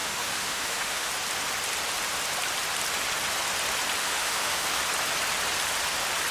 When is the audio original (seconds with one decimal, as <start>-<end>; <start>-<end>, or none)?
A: 1.1-4.0; 4.8-6.3